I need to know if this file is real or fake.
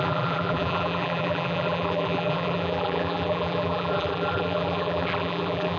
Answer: fake